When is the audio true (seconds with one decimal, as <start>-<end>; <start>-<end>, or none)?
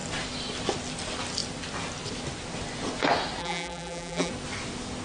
0.0-3.4; 4.3-5.0